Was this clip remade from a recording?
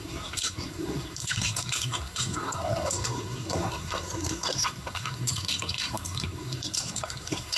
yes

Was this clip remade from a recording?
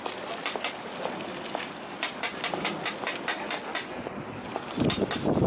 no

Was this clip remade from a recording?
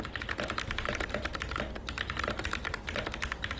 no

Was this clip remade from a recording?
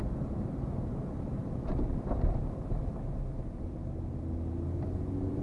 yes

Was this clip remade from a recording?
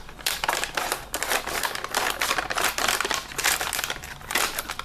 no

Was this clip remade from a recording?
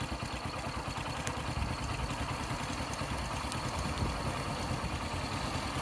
no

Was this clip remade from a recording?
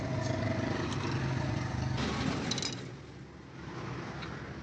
no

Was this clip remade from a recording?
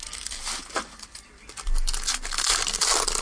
no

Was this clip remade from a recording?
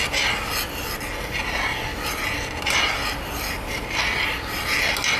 no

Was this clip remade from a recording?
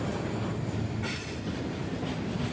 yes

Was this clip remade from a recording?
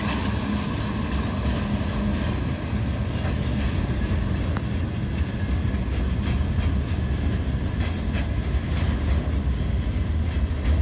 no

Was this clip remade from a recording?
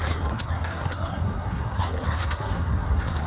yes